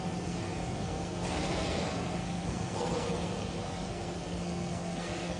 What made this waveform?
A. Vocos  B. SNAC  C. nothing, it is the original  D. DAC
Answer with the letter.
B